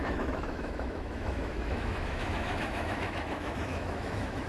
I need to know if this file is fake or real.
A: fake